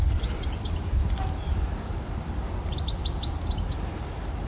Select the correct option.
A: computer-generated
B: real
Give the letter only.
B